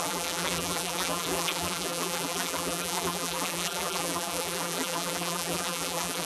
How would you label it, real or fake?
fake